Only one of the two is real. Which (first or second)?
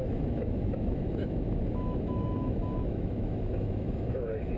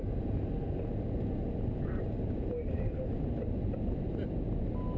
second